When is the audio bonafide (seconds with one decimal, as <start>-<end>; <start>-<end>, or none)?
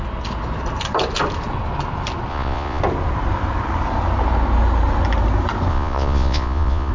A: 0.0-2.3; 2.8-5.7